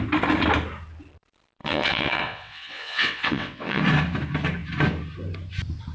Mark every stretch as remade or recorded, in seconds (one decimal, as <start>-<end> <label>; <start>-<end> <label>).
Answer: 0.0-1.6 recorded; 1.6-3.8 remade; 3.8-5.9 recorded